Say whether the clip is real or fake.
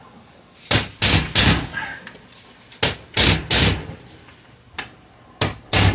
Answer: real